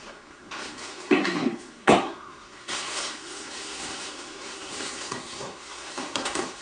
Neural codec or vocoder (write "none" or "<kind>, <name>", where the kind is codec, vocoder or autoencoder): codec, SNAC